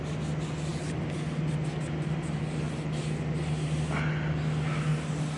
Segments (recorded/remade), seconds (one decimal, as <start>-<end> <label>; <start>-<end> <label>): 0.0-5.4 recorded